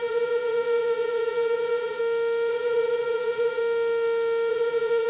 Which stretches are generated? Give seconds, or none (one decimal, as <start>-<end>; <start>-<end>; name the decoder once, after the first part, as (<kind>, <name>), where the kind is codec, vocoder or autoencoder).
0.0-2.0 (vocoder, Vocos); 2.5-3.6; 4.5-5.1